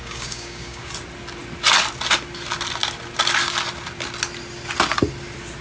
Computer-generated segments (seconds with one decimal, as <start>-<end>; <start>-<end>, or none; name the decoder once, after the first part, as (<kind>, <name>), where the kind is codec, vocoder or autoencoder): 0.0-0.9 (codec, DAC)